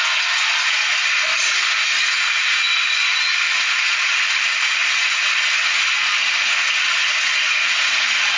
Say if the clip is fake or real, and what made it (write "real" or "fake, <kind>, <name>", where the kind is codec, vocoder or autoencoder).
real